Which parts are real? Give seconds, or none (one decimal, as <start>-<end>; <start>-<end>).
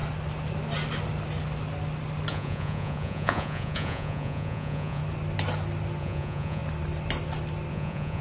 0.0-2.3; 5.0-6.0; 6.6-7.7